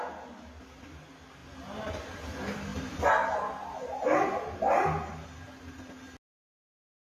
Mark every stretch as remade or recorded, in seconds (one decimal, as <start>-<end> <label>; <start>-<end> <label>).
0.0-7.2 recorded